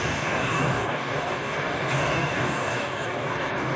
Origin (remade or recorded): remade